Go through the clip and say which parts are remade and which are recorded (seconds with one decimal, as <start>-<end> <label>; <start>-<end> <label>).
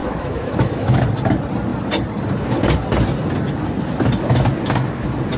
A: 0.0-1.0 remade; 1.0-5.4 recorded